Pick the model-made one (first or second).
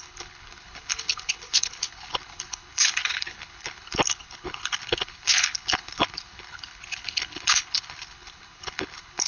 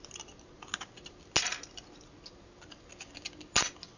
first